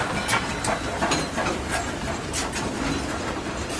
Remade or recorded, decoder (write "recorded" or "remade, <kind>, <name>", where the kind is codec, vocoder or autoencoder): recorded